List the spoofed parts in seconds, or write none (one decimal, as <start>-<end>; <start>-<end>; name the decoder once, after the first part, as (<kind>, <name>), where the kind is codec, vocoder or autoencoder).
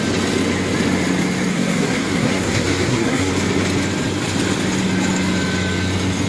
1.5-3.3 (codec, SNAC)